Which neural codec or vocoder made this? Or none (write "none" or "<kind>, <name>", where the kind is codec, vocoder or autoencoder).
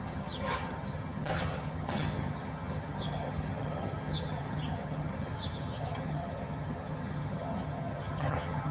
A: vocoder, HiFi-GAN